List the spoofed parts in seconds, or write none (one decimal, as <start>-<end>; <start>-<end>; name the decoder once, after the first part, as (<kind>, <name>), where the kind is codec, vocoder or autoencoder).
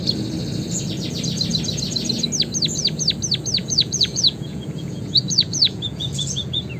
3.6-6.8 (vocoder, Vocos)